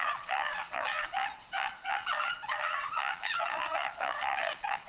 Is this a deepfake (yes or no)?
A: yes